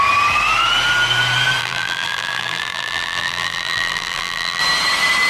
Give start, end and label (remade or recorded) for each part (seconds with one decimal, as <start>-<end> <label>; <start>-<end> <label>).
0.0-1.6 recorded; 1.6-4.6 remade; 4.6-5.3 recorded